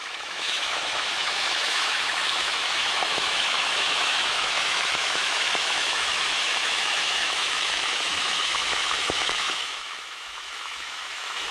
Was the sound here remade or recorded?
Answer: remade